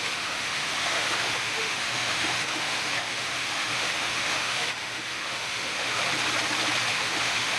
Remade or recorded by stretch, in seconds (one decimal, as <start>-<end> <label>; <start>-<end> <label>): 0.0-6.0 remade; 6.0-6.9 recorded; 6.9-7.6 remade